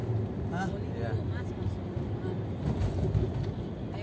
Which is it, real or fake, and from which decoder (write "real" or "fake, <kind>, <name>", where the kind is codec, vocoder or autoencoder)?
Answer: real